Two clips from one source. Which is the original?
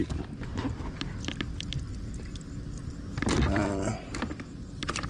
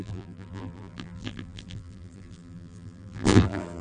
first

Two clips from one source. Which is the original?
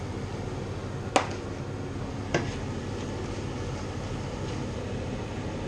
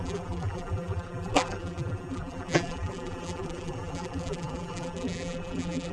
first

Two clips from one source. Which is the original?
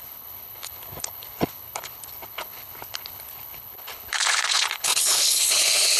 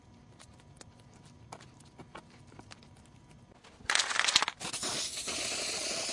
second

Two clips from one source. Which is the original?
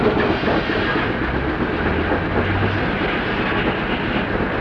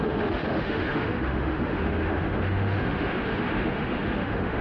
first